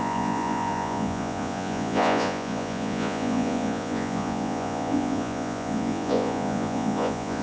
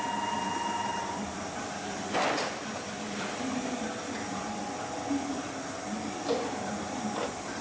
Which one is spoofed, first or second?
first